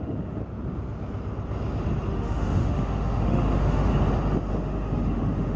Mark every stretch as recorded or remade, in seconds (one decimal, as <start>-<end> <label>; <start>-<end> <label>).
0.0-0.4 remade; 0.4-2.1 recorded; 2.1-3.9 remade; 3.9-4.5 recorded; 4.5-5.6 remade